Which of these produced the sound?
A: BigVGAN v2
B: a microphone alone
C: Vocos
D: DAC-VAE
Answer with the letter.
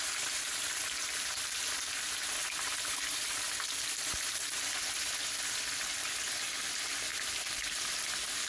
A